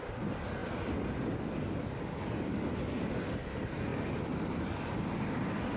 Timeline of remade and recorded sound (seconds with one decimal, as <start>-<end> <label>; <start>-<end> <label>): 0.0-5.8 recorded